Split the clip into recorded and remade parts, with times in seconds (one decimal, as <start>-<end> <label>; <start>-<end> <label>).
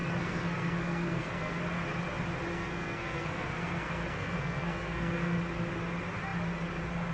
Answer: 0.0-1.6 remade; 1.6-2.5 recorded; 2.5-5.4 remade; 5.4-7.1 recorded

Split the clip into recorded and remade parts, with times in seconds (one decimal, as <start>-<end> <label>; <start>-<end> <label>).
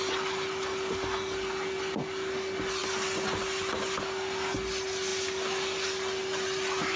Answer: 0.0-7.0 recorded